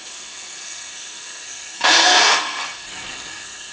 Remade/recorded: remade